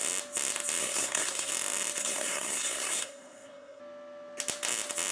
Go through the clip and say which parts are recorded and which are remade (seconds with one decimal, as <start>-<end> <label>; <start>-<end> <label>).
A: 0.0-0.8 recorded; 0.8-1.5 remade; 1.5-2.0 recorded; 2.0-3.8 remade; 3.8-5.1 recorded